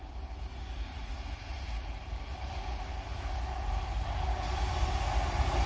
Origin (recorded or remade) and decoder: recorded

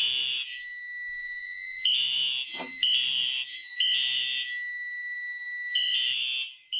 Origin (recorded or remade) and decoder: remade, autoencoder, DAC-VAE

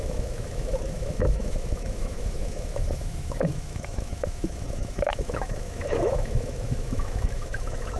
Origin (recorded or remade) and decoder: remade, autoencoder, DAC-VAE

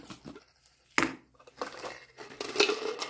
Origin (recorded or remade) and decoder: recorded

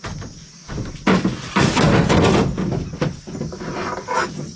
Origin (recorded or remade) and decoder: recorded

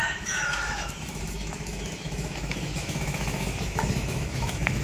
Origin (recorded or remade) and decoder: remade, autoencoder, DAC-VAE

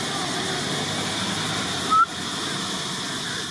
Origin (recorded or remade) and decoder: recorded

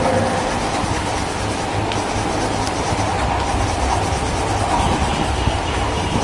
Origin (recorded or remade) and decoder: recorded